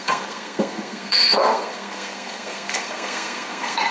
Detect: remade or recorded remade